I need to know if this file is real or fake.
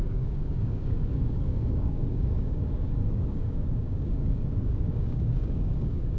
fake